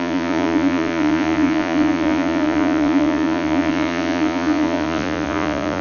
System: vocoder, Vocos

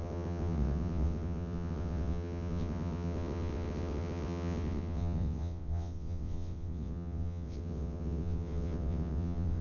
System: vocoder, WaveNeXt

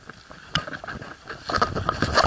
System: none